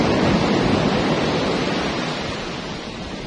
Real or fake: real